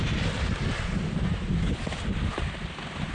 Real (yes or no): yes